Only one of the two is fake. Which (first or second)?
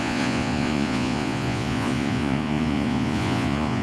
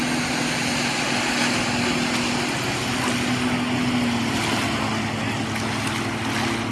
first